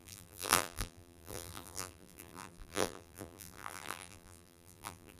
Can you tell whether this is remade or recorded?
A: remade